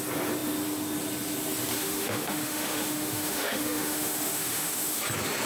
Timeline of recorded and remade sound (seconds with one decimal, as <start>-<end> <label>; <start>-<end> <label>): 0.0-1.7 recorded; 1.7-5.0 remade; 5.0-5.5 recorded